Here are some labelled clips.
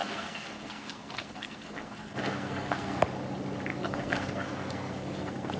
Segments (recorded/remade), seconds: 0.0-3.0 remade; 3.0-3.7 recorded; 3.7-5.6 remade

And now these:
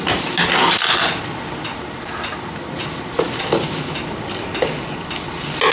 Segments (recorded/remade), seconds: 0.0-5.7 recorded

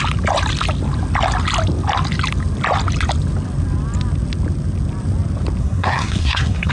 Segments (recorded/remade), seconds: 0.0-5.6 recorded; 5.6-6.7 remade